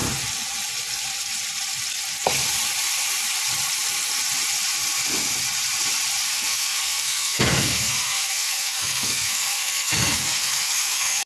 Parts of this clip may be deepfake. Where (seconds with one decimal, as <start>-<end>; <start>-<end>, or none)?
6.3-11.3